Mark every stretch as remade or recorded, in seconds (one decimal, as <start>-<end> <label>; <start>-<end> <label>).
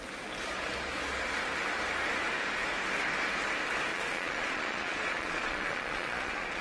0.0-3.9 recorded; 3.9-6.6 remade